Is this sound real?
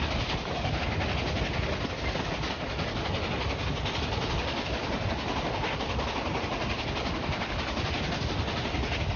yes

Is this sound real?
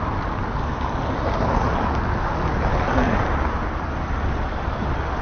yes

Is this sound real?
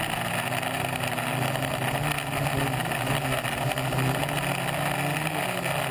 yes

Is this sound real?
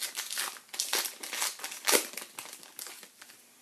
yes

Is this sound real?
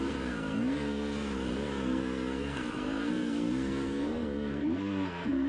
no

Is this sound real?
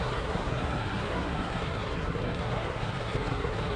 no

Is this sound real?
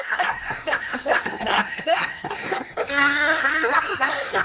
no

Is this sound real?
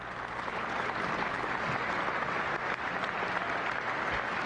yes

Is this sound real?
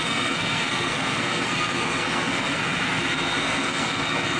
no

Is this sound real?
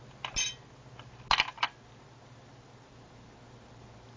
yes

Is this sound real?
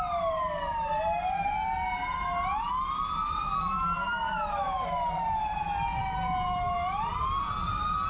yes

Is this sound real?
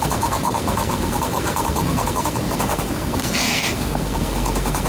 no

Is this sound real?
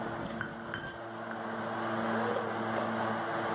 yes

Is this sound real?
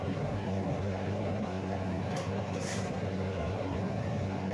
no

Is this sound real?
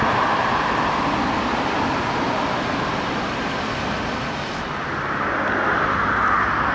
yes